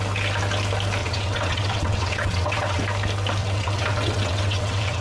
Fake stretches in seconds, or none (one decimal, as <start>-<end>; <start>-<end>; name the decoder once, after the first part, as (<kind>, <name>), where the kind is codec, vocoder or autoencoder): 1.0-2.8 (vocoder, WaveNeXt); 3.4-5.0